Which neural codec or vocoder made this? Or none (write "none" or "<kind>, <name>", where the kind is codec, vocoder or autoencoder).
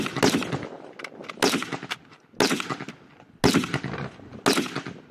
none